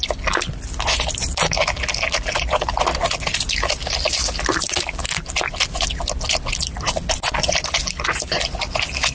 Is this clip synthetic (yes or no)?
no